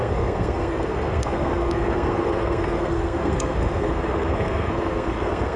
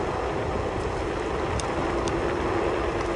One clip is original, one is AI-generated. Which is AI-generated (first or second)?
first